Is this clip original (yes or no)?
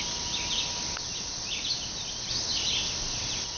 yes